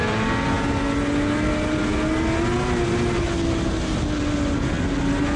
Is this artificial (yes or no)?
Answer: no